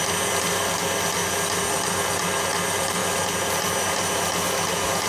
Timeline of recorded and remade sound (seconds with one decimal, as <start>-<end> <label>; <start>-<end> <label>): 0.0-5.1 recorded